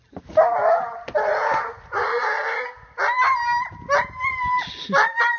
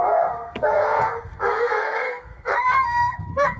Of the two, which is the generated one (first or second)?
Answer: second